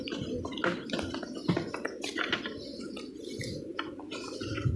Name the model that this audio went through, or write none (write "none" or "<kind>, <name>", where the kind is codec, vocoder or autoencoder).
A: none